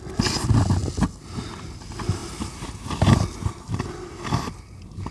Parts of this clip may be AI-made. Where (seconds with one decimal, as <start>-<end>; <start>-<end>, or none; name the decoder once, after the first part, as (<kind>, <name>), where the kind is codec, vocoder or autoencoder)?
none